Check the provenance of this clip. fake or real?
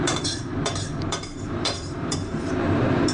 fake